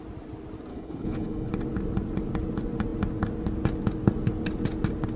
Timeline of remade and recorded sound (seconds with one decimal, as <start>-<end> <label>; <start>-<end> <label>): 0.0-0.7 recorded; 0.7-1.5 remade; 1.5-5.2 recorded